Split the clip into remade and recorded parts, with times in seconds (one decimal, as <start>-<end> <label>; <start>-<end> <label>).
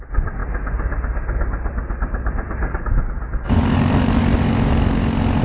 0.0-5.4 recorded